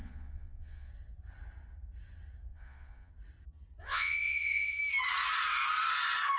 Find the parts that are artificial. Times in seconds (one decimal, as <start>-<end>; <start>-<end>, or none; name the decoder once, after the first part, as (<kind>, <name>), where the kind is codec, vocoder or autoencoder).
0.0-0.9 (vocoder, Vocos); 2.5-3.1; 3.8-4.8